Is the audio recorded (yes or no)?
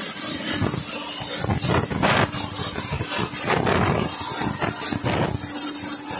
yes